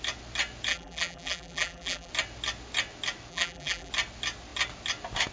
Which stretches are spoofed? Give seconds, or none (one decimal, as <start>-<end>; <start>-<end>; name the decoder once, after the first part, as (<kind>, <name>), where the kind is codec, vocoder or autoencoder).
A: 0.7-2.1 (vocoder, BigVGAN v2); 3.3-3.9